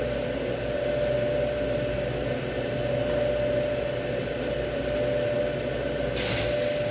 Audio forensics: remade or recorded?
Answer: recorded